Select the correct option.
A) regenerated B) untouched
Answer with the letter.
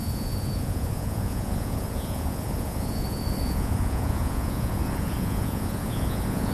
A